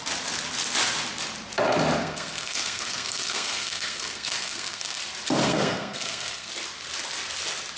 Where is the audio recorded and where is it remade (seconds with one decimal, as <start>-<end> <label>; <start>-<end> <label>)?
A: 0.0-2.0 recorded; 2.0-5.0 remade; 5.0-5.4 recorded; 5.4-6.5 remade; 6.5-7.8 recorded